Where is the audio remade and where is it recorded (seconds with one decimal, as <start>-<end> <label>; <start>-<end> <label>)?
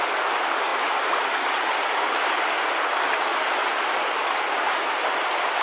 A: 0.0-5.6 recorded